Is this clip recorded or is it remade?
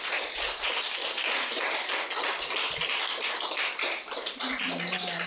recorded